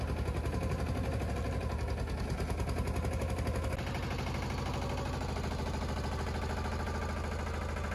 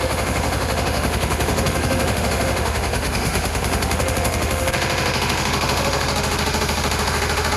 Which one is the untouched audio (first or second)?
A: first